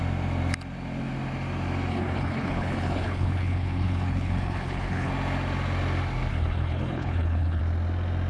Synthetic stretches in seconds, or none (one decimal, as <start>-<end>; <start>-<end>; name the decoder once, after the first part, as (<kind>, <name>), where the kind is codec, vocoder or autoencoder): 1.9-5.1 (codec, HILCodec); 6.3-7.6

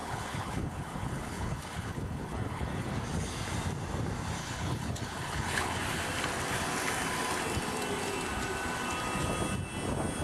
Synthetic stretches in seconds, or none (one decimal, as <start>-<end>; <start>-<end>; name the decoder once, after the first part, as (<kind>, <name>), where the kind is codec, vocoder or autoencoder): 0.0-3.0 (codec, HILCodec); 4.4-5.8